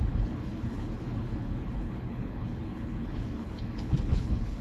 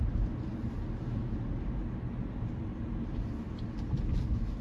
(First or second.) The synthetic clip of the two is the first